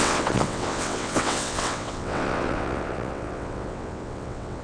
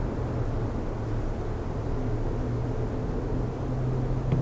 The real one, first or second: second